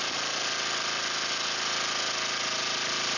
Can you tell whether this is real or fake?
real